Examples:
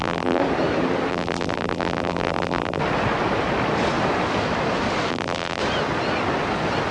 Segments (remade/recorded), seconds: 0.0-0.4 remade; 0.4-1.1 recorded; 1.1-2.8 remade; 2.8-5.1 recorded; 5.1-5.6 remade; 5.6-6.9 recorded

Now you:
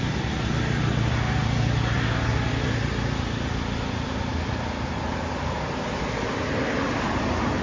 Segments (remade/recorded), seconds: 0.0-7.6 recorded

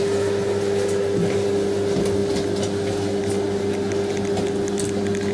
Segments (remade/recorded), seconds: 0.0-5.3 recorded

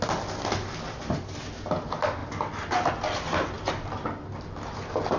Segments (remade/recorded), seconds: 0.0-5.2 recorded

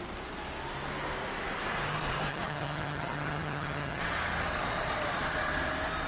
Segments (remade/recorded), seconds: 0.0-2.3 recorded; 2.3-4.0 remade; 4.0-6.1 recorded

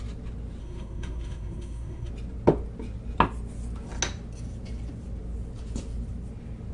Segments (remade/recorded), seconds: 0.0-0.6 recorded; 0.6-2.1 remade; 2.1-6.7 recorded